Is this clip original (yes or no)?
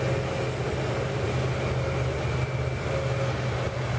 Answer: yes